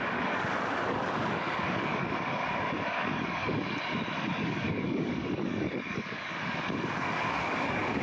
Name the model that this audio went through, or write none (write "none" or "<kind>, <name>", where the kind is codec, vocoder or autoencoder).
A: codec, DAC